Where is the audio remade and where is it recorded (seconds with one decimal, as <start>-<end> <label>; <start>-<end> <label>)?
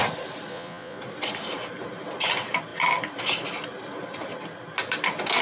0.0-0.5 recorded; 0.5-1.0 remade; 1.0-5.4 recorded